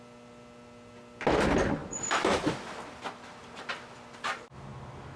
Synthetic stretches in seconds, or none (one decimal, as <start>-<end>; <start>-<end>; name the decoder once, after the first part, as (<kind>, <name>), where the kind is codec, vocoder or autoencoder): none